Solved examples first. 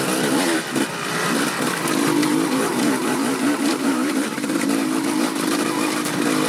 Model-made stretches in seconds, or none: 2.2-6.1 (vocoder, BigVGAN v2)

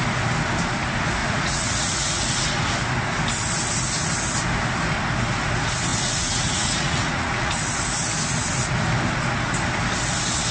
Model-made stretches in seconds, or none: 1.2-2.3 (vocoder, Vocos); 5.9-7.5

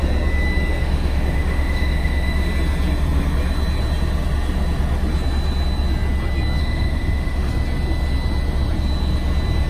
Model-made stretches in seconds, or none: 0.8-2.5 (autoencoder, DAC-VAE); 6.6-7.5

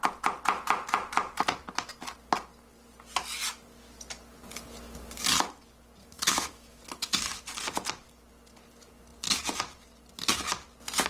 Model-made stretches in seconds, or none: 6.0-6.8 (autoencoder, DAC-VAE)

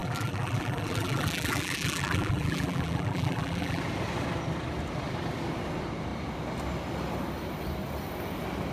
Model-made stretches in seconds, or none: 0.0-3.8 (vocoder, BigVGAN v2)